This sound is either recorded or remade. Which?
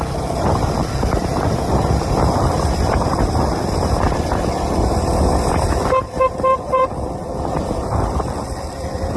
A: remade